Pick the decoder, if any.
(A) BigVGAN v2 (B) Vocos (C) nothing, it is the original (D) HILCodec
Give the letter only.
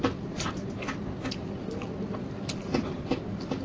C